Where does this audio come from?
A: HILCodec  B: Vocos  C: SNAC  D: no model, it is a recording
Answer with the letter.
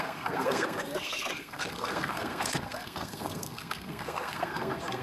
C